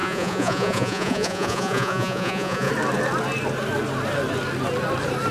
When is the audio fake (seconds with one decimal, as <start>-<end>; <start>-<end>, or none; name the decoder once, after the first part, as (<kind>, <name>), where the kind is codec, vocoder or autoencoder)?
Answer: 0.0-2.7 (vocoder, Vocos)